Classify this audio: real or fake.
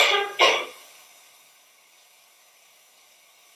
fake